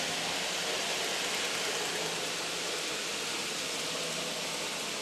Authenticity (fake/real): real